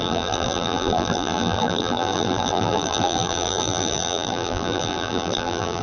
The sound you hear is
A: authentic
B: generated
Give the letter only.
B